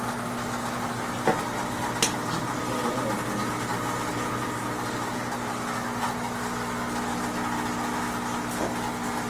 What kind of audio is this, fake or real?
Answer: real